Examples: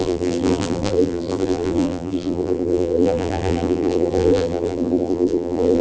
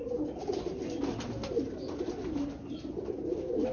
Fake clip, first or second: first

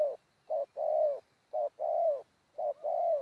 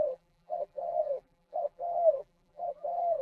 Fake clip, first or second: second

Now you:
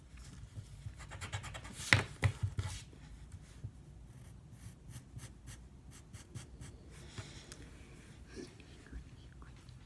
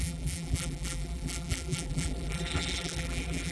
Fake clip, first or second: second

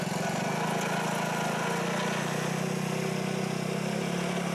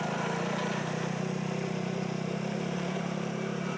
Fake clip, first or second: second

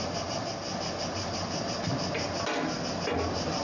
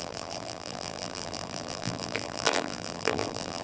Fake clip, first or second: second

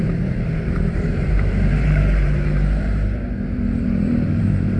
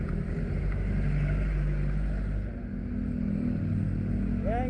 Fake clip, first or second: first